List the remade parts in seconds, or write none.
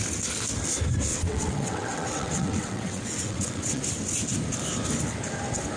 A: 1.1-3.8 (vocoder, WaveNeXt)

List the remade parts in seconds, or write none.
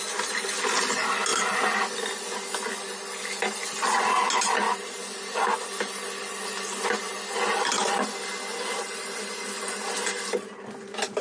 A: none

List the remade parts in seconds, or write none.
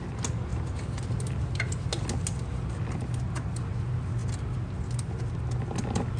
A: none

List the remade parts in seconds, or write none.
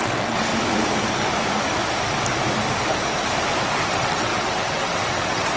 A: 0.0-0.5 (vocoder, WaveNeXt); 3.9-5.6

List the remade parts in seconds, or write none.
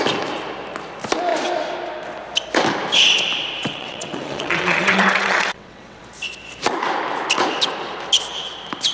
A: 3.6-6.0 (vocoder, WaveNeXt)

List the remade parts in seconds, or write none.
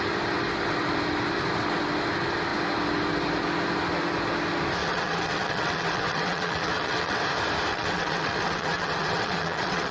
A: 4.8-7.2 (vocoder, WaveNeXt); 7.7-9.9